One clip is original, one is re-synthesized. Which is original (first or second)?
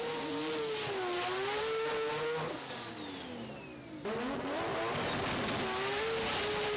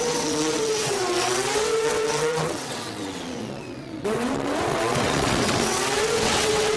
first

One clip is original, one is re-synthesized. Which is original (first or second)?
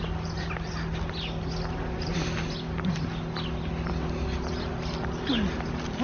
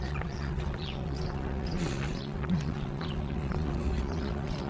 first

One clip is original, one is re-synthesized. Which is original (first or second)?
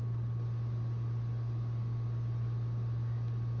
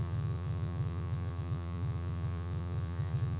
first